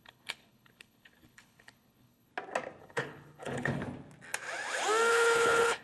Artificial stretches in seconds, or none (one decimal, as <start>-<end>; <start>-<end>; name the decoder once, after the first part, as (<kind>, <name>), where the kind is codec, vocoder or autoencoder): 0.0-2.3 (codec, HILCodec); 2.8-3.8; 5.1-5.8

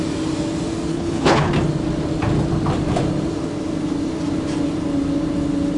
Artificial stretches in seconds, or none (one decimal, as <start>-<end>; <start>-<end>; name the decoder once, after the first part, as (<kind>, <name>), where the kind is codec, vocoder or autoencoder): 0.9-1.5 (codec, HILCodec)

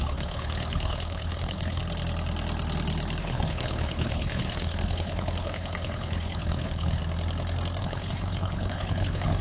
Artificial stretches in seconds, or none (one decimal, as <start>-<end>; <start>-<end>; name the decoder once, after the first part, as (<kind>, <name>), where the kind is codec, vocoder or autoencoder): 0.0-1.8 (codec, HILCodec); 3.2-7.0; 7.8-9.4